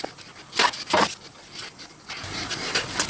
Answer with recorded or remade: remade